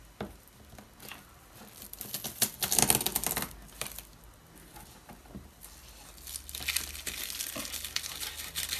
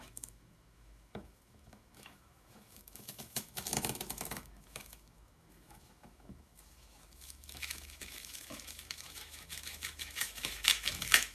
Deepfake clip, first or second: second